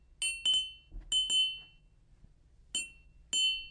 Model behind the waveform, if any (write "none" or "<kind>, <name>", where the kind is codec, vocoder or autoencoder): none